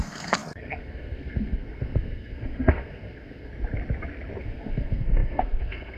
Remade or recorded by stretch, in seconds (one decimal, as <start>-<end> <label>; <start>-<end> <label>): 0.0-3.5 remade; 3.5-4.4 recorded; 4.4-6.0 remade